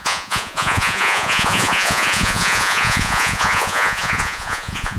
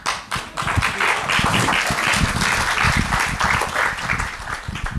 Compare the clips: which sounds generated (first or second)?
first